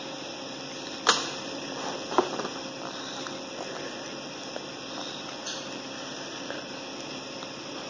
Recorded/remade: recorded